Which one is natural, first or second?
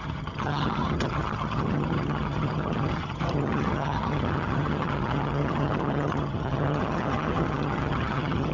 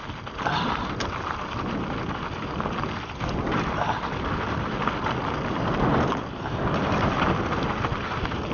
second